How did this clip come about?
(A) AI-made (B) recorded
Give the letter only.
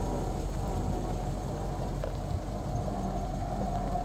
B